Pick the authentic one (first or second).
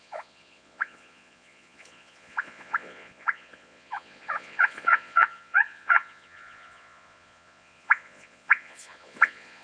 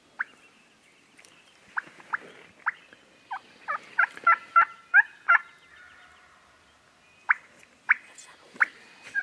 second